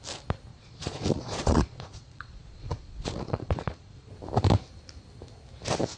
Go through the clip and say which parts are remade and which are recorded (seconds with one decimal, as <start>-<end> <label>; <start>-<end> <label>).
0.0-0.5 recorded; 0.5-4.1 remade; 4.1-6.0 recorded